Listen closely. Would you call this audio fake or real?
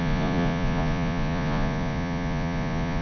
fake